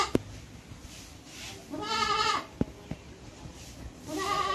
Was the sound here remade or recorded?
recorded